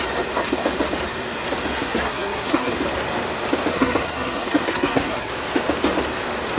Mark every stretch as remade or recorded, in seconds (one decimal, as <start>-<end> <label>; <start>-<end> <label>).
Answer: 0.0-1.7 recorded; 1.7-2.7 remade; 2.7-3.7 recorded; 3.7-5.3 remade; 5.3-6.6 recorded